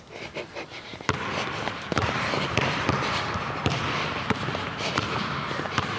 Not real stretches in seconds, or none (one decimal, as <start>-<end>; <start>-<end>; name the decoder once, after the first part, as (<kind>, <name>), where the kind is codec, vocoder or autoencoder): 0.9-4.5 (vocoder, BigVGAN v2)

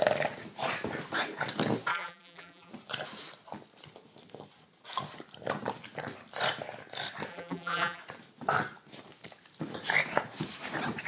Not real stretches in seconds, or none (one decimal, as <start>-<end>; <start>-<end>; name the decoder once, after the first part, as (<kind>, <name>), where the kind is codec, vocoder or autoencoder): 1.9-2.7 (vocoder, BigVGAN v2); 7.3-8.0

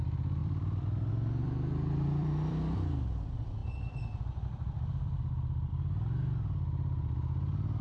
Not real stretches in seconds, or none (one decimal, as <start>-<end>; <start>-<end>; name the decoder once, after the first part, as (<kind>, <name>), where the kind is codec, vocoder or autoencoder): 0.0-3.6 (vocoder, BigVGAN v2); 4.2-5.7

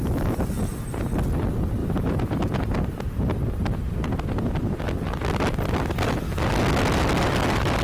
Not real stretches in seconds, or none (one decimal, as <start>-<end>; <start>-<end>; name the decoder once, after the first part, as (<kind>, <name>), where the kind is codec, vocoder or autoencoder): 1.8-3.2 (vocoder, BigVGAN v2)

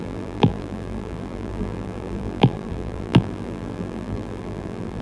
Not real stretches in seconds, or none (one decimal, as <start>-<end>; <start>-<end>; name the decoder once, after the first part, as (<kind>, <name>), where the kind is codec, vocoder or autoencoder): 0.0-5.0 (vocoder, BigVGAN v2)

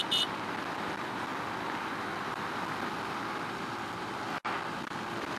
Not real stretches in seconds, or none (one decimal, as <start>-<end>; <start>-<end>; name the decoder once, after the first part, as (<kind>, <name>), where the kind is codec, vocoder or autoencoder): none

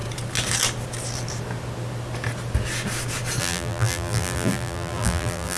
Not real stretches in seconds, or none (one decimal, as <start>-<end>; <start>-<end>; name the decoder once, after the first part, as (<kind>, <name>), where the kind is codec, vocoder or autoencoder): 3.4-5.6 (vocoder, BigVGAN v2)